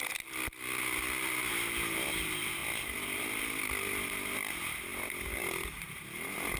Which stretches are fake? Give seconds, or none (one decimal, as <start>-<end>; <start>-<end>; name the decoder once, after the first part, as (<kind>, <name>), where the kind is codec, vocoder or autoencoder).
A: none